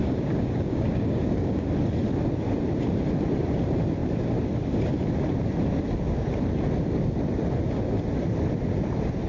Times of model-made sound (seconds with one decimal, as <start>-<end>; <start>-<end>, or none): 0.0-1.7